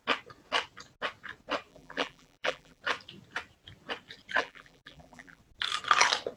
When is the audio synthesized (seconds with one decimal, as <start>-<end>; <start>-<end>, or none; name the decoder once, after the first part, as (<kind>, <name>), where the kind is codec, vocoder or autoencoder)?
1.7-2.8 (vocoder, BigVGAN v2); 4.4-5.4